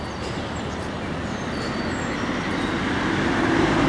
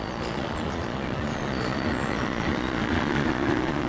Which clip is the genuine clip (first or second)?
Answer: first